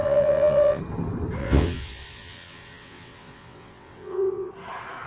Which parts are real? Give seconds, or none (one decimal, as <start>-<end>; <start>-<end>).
0.8-1.4; 4.5-5.1